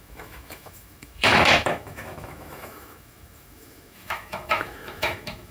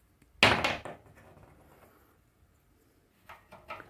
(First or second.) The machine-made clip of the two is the first